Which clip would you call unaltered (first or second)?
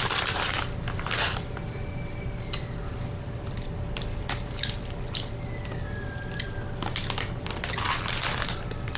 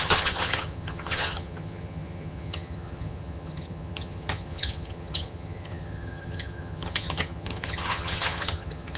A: first